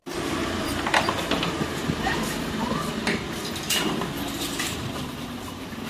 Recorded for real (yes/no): yes